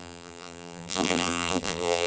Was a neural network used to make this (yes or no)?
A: yes